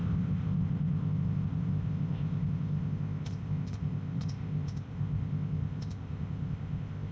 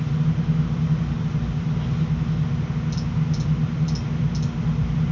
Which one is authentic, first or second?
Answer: second